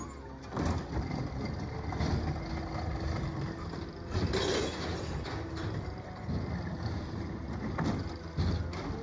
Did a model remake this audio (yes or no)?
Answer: no